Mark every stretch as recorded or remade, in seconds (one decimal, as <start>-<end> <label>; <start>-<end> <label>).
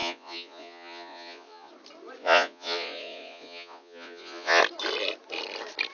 0.0-1.7 remade; 1.7-2.2 recorded; 2.2-4.6 remade; 4.6-5.9 recorded